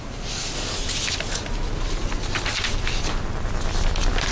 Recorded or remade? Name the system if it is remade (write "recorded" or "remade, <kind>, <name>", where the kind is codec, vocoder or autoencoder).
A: recorded